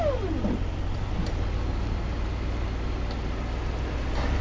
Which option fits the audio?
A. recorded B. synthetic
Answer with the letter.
A